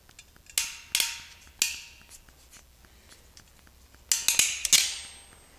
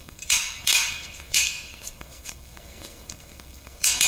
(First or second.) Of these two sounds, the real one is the first